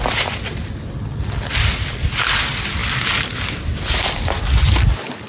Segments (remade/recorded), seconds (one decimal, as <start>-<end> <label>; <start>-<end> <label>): 0.0-5.3 recorded